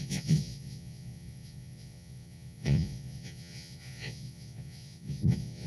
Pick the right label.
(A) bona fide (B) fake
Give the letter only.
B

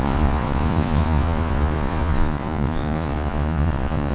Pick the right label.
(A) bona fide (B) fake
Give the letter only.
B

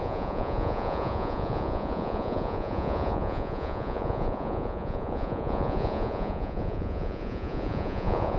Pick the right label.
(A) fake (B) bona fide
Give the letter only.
A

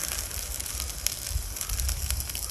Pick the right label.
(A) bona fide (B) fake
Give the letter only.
A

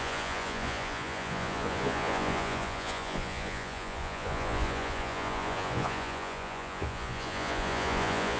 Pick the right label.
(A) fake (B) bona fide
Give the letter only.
A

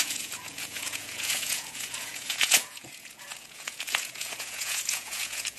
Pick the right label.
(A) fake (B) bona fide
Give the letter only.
A